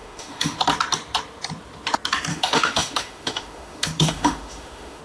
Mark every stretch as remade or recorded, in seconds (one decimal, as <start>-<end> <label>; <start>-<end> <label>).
0.0-0.6 remade; 0.6-2.3 recorded; 2.3-5.0 remade